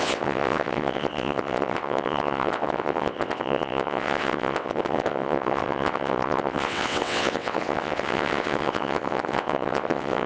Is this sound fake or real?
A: fake